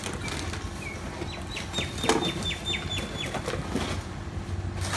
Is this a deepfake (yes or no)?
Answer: no